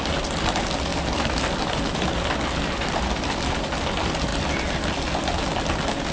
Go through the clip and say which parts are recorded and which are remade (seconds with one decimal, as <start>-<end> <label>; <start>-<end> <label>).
0.0-0.9 recorded; 0.9-3.3 remade; 3.3-6.1 recorded